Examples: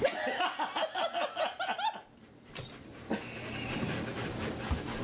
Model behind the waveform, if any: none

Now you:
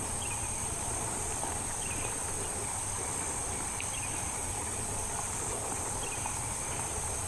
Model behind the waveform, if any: none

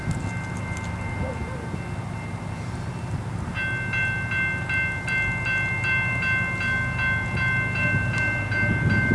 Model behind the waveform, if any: none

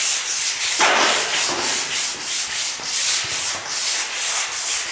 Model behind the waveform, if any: none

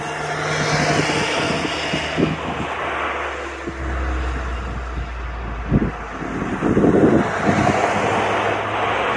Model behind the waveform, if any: none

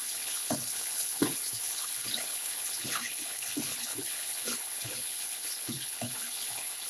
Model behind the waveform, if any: codec, HILCodec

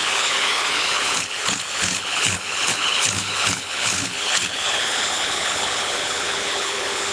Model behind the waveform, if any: codec, HILCodec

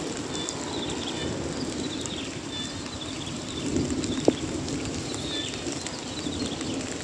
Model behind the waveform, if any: none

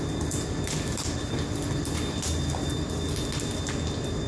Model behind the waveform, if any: none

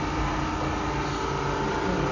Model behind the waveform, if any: none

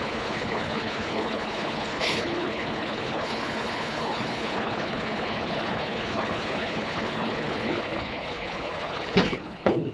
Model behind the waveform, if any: codec, HILCodec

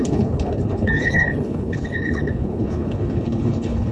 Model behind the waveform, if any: codec, HILCodec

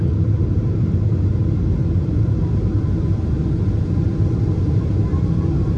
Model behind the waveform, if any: none